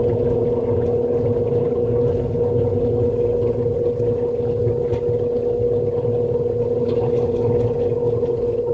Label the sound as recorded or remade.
recorded